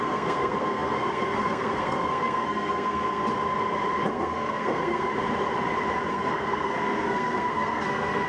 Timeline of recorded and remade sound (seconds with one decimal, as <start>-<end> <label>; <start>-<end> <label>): 0.0-3.2 remade; 3.2-4.1 recorded; 4.1-5.1 remade; 5.1-6.1 recorded; 6.1-8.3 remade